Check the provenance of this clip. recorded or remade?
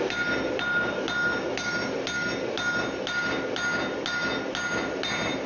recorded